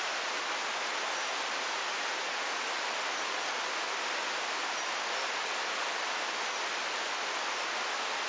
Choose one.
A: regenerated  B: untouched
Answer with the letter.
B